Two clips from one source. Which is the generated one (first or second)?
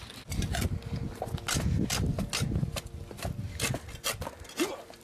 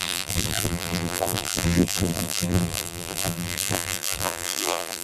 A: second